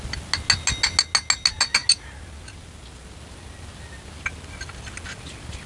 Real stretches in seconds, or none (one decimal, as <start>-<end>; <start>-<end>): 0.0-5.7